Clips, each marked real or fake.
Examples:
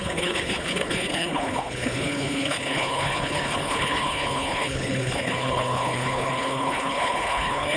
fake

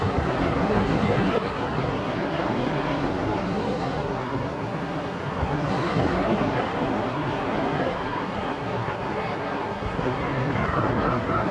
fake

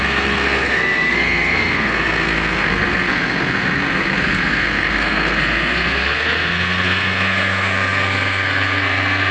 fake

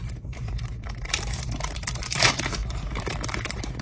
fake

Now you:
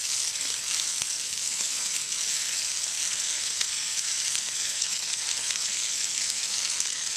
fake